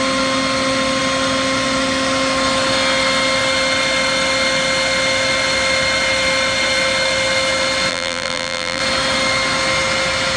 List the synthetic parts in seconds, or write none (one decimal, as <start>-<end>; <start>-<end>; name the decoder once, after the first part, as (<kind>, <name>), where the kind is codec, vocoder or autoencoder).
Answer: 7.9-8.8 (vocoder, BigVGAN v2)